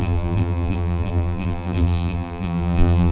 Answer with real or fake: fake